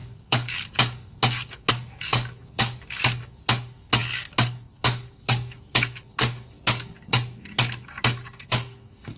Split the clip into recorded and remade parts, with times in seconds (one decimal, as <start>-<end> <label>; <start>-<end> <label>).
0.0-9.2 remade